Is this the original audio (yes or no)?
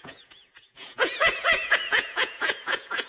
no